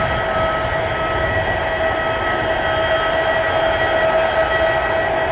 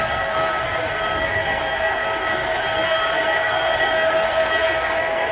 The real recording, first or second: first